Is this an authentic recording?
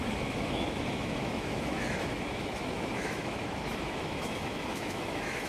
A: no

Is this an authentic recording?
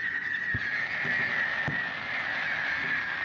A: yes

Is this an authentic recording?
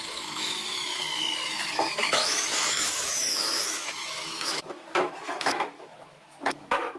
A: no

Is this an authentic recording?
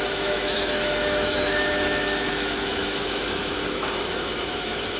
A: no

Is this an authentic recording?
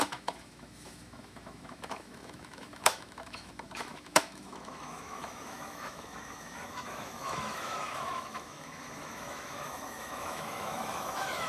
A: no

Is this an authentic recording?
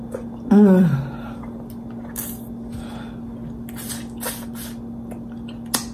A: yes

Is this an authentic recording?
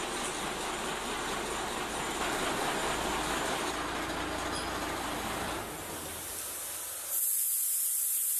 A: yes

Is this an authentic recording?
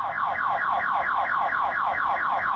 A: no